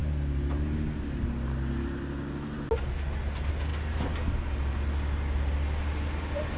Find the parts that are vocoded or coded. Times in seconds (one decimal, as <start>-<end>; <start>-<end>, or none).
none